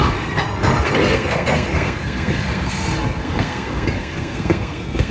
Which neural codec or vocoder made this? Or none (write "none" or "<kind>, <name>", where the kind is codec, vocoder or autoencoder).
codec, SNAC